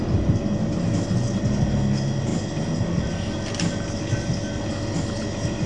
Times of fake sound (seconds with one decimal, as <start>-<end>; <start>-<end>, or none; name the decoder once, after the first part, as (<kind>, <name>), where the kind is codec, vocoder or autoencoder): none